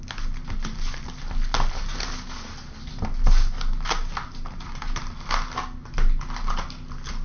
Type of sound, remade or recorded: recorded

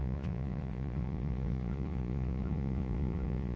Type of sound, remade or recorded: remade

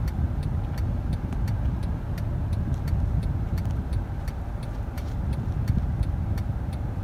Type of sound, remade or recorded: recorded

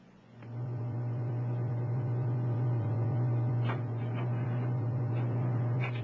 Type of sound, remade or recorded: remade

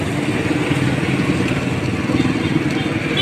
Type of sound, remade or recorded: recorded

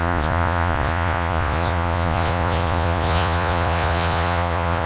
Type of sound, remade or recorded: remade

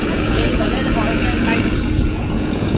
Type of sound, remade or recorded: remade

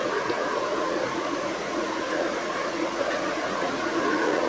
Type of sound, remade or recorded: remade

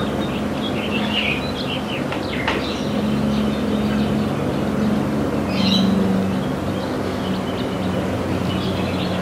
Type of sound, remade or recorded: recorded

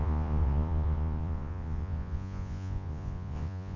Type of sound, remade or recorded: remade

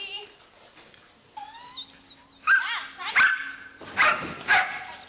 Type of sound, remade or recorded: recorded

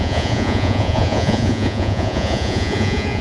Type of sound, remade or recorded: remade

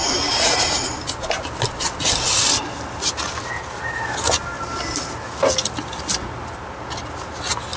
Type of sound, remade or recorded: recorded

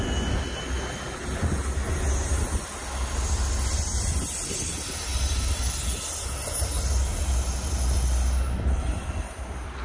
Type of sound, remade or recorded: recorded